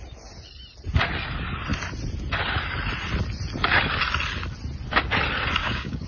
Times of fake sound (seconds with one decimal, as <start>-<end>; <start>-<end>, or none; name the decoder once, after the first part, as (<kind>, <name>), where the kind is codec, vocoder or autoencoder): 5.6-6.1 (codec, DAC)

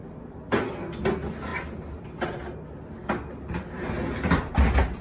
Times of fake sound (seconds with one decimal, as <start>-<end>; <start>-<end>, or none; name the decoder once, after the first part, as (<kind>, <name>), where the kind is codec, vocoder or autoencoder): none

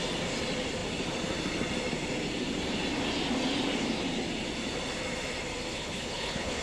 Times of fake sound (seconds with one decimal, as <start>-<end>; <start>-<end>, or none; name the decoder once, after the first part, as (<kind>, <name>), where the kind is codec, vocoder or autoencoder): 5.7-6.6 (codec, HILCodec)